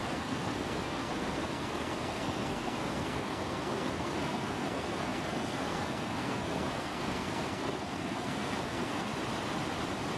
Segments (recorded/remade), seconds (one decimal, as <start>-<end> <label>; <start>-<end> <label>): 0.0-9.1 remade; 9.1-10.2 recorded